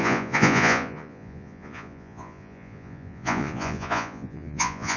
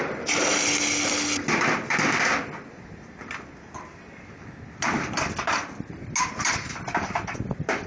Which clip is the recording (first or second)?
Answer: second